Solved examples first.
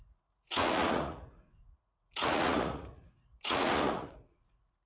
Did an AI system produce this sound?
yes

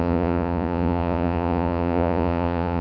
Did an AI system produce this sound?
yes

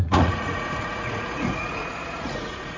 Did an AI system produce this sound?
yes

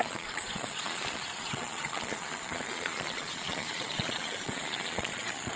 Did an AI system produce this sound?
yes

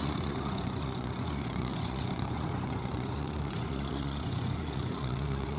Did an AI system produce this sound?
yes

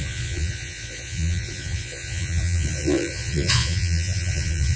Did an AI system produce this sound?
yes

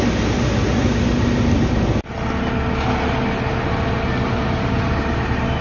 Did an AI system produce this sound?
no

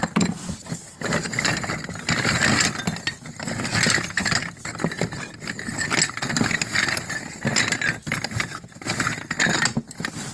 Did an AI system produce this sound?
no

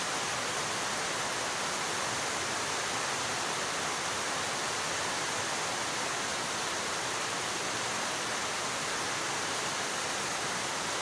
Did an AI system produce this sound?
no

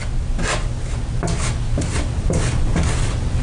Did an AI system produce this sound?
no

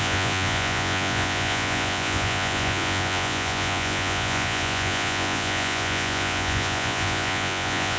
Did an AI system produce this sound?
yes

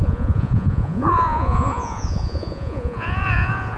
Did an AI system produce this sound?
yes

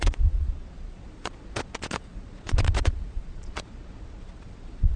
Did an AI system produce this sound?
yes